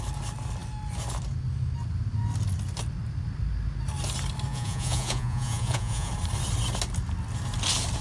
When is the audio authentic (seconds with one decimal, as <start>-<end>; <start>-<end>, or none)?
0.0-4.5; 6.1-8.0